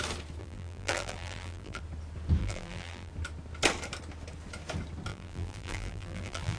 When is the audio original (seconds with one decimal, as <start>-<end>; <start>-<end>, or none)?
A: 0.0-0.4; 1.8-2.4; 3.1-5.1